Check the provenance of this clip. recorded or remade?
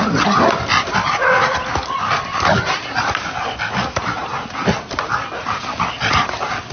recorded